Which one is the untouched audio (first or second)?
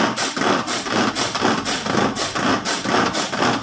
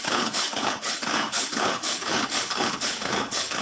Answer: first